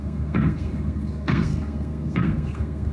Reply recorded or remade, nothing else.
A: remade